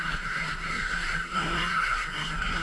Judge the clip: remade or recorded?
remade